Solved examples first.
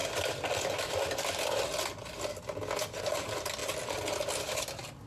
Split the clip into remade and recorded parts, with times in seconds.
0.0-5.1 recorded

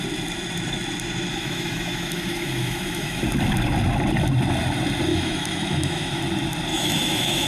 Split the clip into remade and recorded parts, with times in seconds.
0.0-1.3 recorded; 1.3-3.2 remade; 3.2-5.1 recorded; 5.1-6.2 remade; 6.2-6.7 recorded; 6.7-7.5 remade

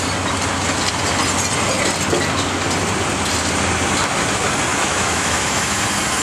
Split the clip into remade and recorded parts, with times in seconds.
0.0-4.7 recorded; 4.7-5.8 remade; 5.8-6.2 recorded

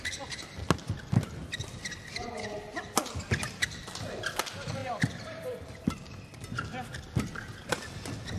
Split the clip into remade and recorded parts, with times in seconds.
0.0-8.4 recorded

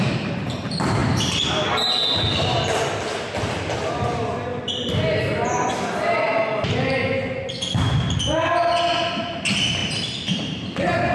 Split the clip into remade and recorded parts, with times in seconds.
0.0-11.1 recorded

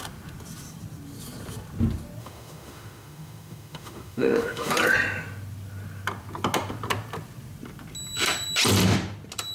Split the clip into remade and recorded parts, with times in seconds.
0.0-2.2 recorded; 2.2-4.7 remade; 4.7-9.5 recorded